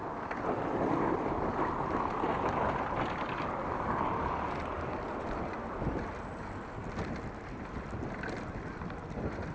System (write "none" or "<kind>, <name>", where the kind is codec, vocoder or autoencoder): none